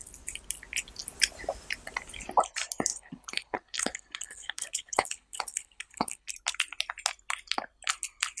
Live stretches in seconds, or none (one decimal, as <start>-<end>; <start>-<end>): 0.0-2.9; 6.3-8.4